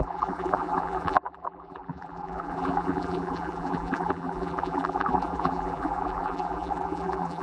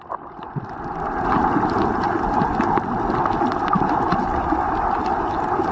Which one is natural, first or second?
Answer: second